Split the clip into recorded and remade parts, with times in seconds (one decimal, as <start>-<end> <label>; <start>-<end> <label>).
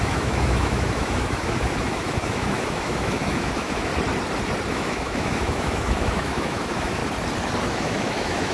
0.0-3.9 remade; 3.9-4.7 recorded; 4.7-7.0 remade; 7.0-7.6 recorded; 7.6-8.5 remade